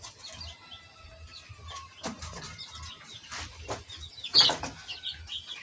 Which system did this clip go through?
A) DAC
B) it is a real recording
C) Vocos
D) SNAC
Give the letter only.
B